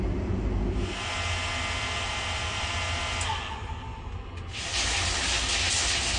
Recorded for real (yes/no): yes